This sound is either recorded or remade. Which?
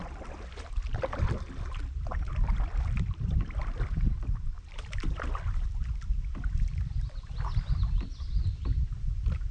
remade